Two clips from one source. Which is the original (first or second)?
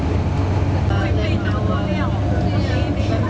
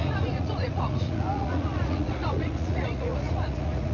first